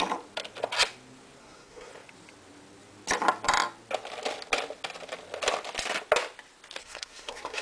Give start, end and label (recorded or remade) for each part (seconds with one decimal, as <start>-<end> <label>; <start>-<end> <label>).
0.0-1.4 recorded; 1.4-1.9 remade; 1.9-6.8 recorded; 6.8-7.6 remade